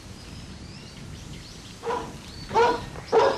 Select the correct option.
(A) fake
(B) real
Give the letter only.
B